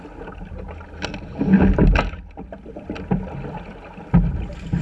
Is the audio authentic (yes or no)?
yes